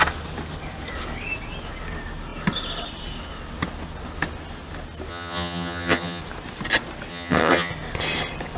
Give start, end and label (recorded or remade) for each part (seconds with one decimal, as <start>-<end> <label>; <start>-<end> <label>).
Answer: 0.0-5.1 recorded; 5.1-6.2 remade; 6.2-7.1 recorded; 7.1-7.7 remade; 7.7-8.6 recorded